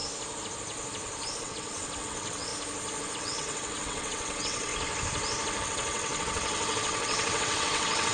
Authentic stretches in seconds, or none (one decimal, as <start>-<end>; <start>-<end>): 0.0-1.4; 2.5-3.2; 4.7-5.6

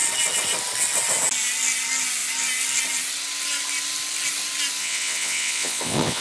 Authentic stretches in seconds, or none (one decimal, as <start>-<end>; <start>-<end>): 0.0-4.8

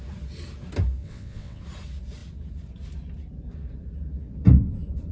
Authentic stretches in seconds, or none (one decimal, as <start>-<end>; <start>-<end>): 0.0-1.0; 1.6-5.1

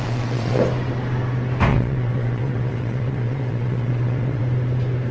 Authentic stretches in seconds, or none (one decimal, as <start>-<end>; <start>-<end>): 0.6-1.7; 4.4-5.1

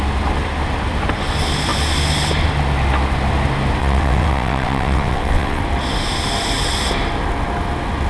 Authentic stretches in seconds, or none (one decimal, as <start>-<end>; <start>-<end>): 0.0-3.8; 5.6-8.1

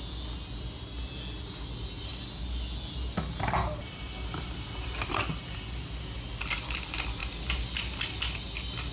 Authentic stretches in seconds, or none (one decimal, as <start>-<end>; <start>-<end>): 0.0-8.9

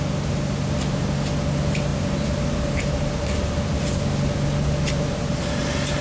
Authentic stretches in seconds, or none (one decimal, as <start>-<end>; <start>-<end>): 0.0-6.0